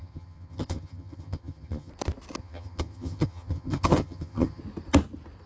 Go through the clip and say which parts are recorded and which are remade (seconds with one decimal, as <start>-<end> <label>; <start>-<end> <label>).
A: 0.0-1.9 remade; 1.9-2.4 recorded; 2.4-4.6 remade; 4.6-5.5 recorded